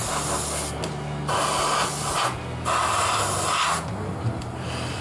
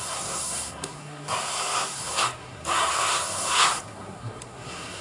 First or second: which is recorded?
first